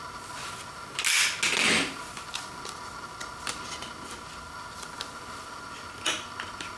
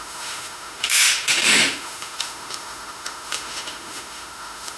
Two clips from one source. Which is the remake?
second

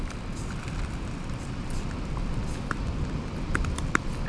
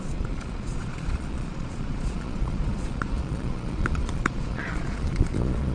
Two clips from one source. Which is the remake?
second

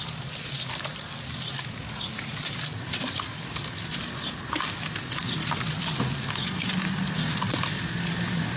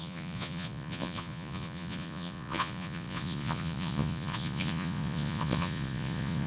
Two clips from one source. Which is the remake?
second